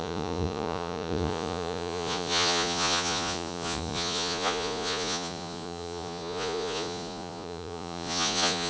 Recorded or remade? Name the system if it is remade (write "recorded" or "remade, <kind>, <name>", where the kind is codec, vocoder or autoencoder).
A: remade, vocoder, Vocos